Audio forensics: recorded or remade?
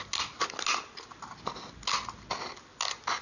recorded